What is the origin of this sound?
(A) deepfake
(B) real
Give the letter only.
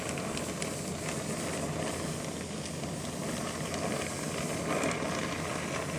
B